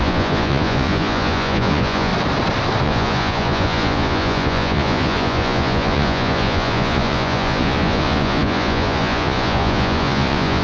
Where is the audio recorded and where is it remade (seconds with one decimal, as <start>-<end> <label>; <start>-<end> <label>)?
0.0-2.1 remade; 2.1-2.8 recorded; 2.8-10.6 remade